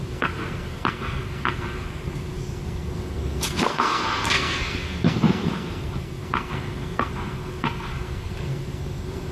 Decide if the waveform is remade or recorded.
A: remade